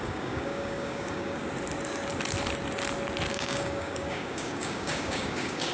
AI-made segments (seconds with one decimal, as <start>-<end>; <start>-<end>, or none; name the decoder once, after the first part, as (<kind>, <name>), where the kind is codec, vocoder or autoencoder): 0.0-1.4 (codec, DAC); 3.3-5.7